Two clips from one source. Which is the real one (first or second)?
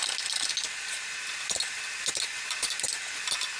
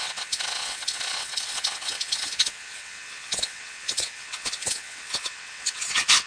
first